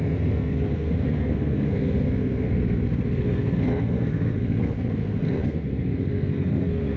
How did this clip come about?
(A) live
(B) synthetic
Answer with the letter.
B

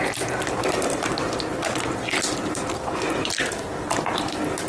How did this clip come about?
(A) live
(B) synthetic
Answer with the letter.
A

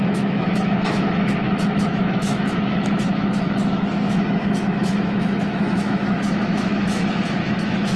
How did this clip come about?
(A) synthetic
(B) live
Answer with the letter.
A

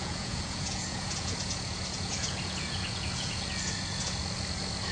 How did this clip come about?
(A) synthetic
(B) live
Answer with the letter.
A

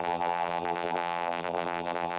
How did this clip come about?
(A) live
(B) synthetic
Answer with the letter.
B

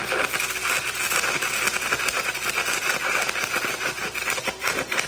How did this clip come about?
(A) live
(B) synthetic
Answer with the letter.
A